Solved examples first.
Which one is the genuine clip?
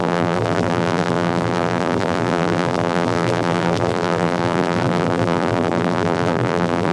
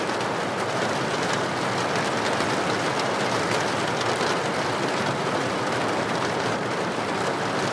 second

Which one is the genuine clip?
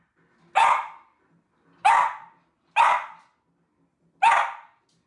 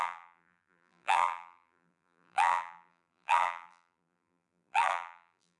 first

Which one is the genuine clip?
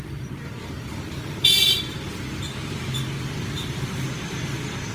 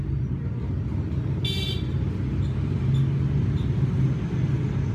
second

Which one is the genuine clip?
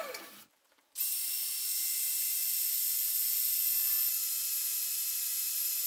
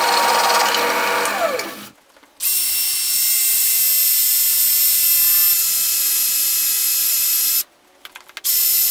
second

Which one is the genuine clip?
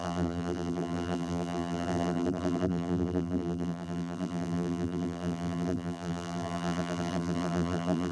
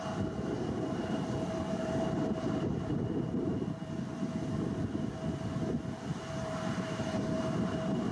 second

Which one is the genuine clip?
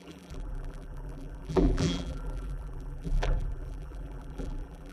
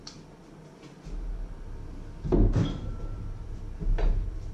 second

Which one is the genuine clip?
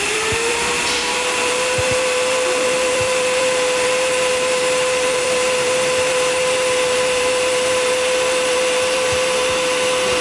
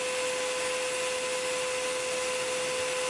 second